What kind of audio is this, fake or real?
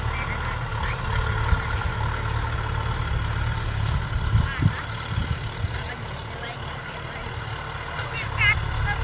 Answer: real